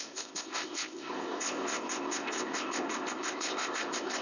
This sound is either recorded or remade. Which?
remade